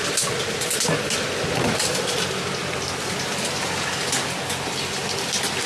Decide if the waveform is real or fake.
real